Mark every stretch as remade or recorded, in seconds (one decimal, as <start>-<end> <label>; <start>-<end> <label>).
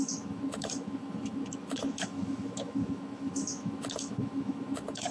0.0-5.1 remade